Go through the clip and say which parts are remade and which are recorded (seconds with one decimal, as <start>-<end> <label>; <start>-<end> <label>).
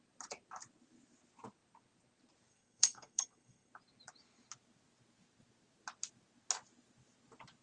0.0-2.5 recorded; 2.5-3.7 remade; 3.7-7.6 recorded